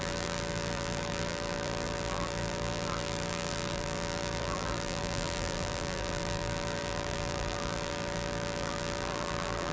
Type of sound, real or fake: fake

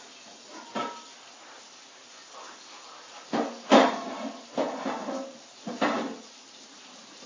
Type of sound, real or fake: fake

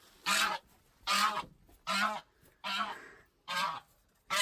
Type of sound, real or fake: real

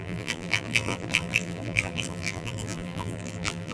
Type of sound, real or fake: fake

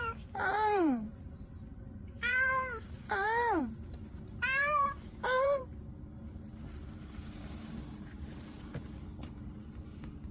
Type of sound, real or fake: fake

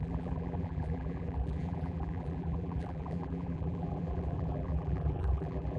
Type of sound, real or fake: fake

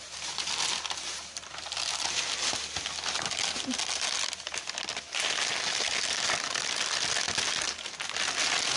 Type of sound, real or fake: real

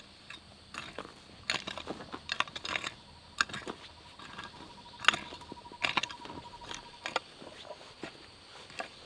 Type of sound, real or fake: real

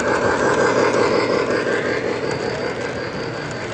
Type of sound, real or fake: real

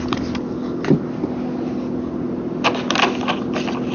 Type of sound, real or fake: real